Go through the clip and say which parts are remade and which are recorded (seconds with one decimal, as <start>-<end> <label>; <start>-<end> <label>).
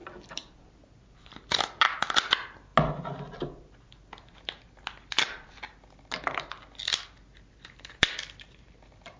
0.0-9.2 recorded